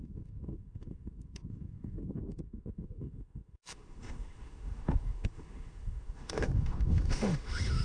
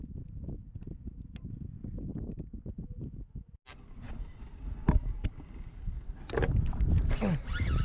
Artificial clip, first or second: first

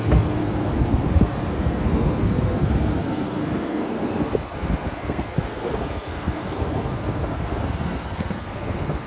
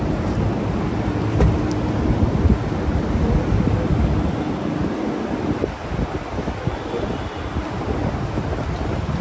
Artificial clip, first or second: first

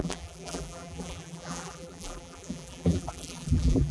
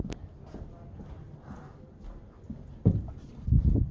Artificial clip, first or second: first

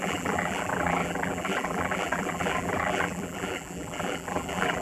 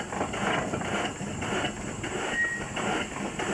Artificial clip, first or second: first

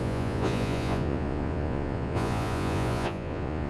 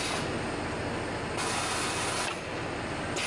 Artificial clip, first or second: first